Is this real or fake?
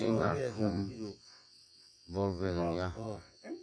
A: fake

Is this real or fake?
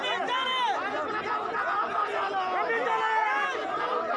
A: real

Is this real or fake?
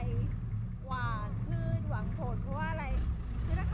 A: real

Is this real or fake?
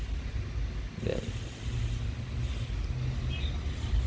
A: real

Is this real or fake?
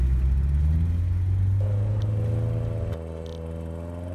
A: real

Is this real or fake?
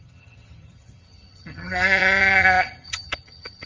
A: fake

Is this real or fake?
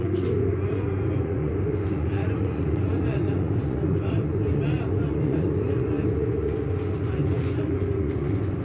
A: fake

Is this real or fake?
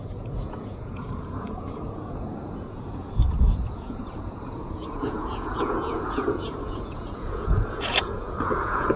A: fake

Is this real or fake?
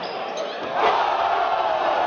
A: real